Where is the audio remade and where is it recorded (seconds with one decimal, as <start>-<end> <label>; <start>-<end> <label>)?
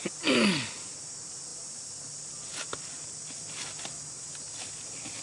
0.0-5.2 recorded